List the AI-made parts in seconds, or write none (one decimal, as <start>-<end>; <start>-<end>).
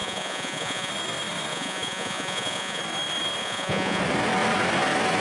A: 0.0-0.9; 1.5-2.8; 3.4-4.0